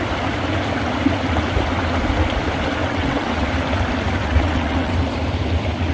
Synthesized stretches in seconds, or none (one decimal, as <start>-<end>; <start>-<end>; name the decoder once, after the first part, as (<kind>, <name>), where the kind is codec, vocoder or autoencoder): 2.8-3.5 (vocoder, WaveNeXt); 4.2-4.9